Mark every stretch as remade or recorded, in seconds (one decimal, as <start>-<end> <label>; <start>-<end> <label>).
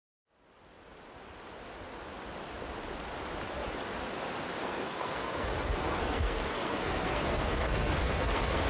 0.0-4.6 recorded; 4.6-8.7 remade